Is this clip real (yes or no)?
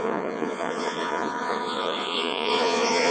no